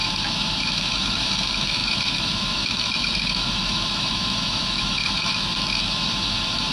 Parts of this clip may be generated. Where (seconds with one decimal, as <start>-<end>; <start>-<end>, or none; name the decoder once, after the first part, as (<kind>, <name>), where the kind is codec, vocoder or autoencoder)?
0.0-6.7 (autoencoder, DAC-VAE)